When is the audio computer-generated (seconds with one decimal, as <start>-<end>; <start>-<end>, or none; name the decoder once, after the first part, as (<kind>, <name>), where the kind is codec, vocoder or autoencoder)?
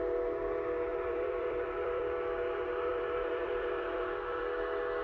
0.9-2.0 (vocoder, BigVGAN v2); 2.9-4.4